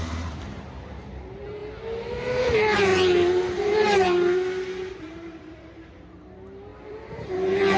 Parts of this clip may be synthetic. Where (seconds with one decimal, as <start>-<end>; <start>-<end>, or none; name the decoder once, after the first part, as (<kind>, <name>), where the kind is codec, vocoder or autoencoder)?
0.0-1.6 (vocoder, BigVGAN v2); 2.1-2.9; 3.4-7.8